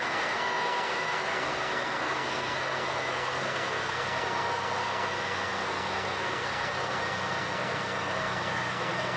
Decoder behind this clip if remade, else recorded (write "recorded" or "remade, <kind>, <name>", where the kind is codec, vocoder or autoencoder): remade, codec, SNAC